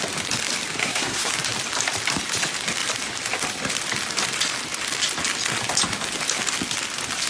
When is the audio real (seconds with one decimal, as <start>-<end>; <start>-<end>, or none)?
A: 0.0-0.8; 1.3-7.3